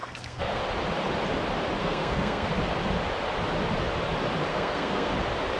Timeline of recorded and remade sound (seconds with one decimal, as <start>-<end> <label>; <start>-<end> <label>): 0.0-0.6 remade; 0.6-1.8 recorded; 1.8-2.5 remade; 2.5-4.5 recorded; 4.5-5.1 remade; 5.1-5.6 recorded